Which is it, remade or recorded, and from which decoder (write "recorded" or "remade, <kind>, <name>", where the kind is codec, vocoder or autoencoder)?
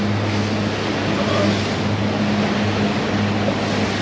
recorded